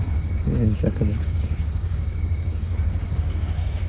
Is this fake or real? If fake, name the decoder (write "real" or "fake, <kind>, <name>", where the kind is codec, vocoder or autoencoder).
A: fake, codec, DAC